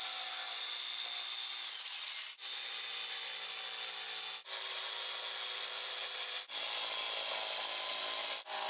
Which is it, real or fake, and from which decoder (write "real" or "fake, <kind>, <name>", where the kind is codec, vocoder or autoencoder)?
real